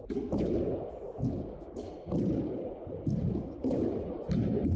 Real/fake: real